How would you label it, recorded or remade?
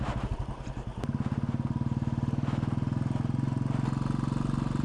recorded